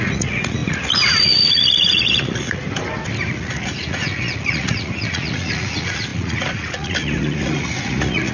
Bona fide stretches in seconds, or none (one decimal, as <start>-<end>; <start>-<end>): 2.6-3.3